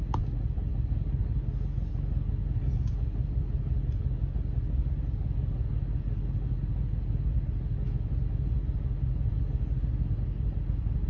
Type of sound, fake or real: real